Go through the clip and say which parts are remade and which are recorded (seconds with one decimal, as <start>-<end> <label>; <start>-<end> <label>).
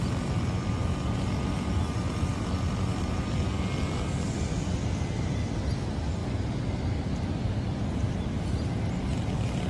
0.0-9.7 recorded